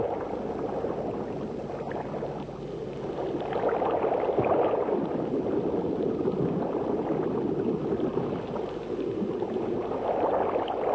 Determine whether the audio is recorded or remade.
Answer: recorded